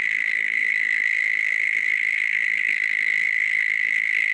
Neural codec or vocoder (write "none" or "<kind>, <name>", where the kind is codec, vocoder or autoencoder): codec, SNAC